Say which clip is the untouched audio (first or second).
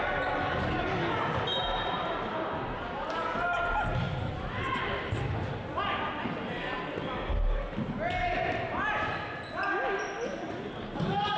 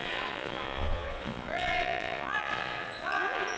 first